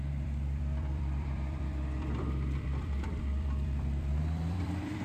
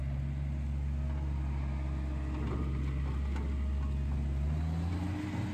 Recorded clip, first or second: second